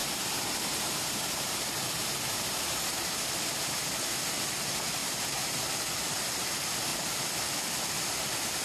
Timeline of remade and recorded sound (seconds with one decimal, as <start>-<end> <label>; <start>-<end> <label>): 0.0-3.2 remade; 3.2-8.6 recorded